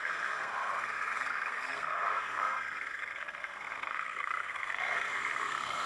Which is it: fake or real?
fake